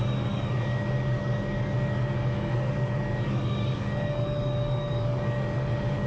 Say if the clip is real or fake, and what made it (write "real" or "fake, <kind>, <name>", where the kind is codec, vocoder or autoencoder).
fake, codec, DAC